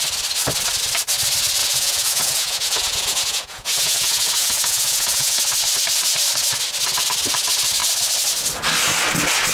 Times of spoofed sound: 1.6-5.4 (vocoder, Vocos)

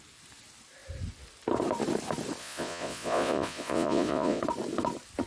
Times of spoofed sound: 2.4-4.4 (vocoder, Vocos)

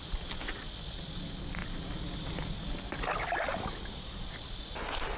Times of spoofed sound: none

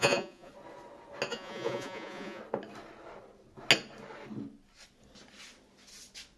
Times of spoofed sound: 0.0-0.5 (vocoder, Vocos); 1.3-2.4